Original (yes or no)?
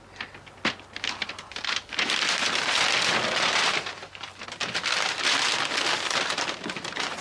yes